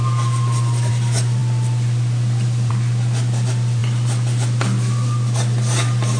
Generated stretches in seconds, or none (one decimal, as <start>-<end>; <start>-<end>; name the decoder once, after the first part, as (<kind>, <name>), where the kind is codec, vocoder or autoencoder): 0.0-0.9 (vocoder, BigVGAN v2); 3.8-6.2